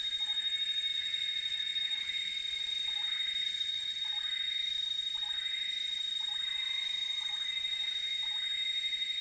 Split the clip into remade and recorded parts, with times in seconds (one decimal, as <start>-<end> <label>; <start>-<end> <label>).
0.0-0.9 recorded; 0.9-2.3 remade; 2.3-3.4 recorded; 3.4-4.0 remade; 4.0-9.2 recorded